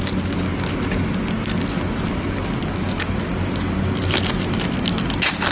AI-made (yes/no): no